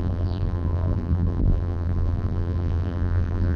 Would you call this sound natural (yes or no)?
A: no